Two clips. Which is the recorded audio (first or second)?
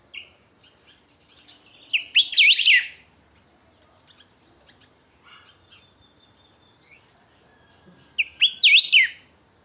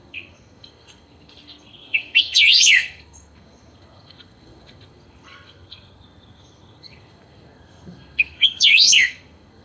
first